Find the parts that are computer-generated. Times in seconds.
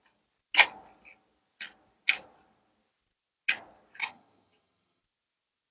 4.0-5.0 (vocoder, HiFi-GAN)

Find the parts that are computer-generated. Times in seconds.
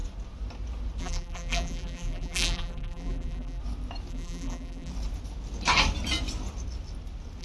1.0-3.6 (vocoder, BigVGAN v2); 4.1-4.9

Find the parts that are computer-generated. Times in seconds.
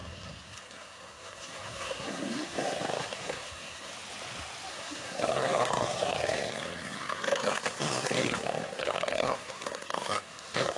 0.0-3.9 (codec, SNAC); 4.7-10.8